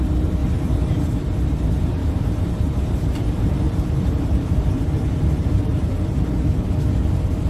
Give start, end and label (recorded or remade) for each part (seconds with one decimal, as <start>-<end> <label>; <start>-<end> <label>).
0.0-0.4 recorded; 0.4-1.1 remade; 1.1-2.0 recorded; 2.0-5.9 remade; 5.9-7.5 recorded